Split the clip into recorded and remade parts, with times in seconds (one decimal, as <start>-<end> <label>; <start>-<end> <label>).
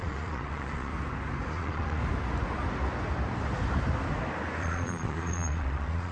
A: 0.0-0.9 remade; 0.9-1.5 recorded; 1.5-2.0 remade; 2.0-4.6 recorded; 4.6-6.1 remade